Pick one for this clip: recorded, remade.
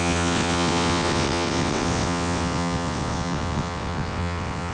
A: remade